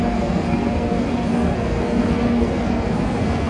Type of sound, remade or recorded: remade